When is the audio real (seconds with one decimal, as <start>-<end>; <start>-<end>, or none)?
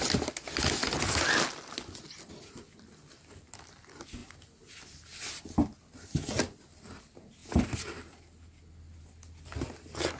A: 0.0-10.2